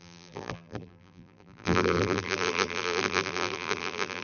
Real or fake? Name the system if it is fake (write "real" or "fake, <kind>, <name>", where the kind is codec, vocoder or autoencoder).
fake, vocoder, BigVGAN v2